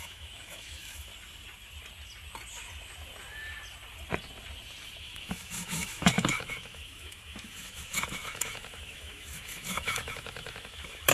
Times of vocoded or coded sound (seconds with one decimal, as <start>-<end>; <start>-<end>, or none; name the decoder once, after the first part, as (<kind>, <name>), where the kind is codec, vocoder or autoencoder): 0.0-1.1 (autoencoder, DAC-VAE); 5.0-11.1